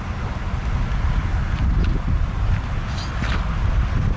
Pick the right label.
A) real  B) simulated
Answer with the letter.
A